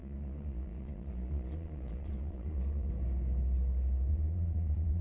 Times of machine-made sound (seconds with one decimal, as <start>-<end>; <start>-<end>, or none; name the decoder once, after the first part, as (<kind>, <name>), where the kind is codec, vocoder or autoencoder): 0.0-2.9 (vocoder, Vocos); 4.1-5.0